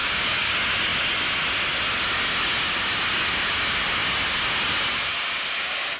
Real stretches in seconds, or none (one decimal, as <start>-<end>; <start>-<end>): 0.5-6.0